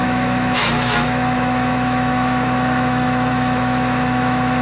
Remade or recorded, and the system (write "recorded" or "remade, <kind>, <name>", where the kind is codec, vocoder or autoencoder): remade, autoencoder, DAC-VAE